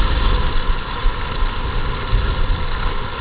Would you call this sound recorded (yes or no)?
yes